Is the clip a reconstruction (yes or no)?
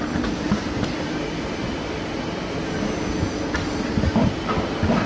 no